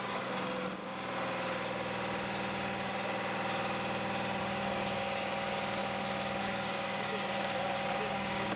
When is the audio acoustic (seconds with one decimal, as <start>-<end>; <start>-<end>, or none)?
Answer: 0.8-4.4; 5.8-6.4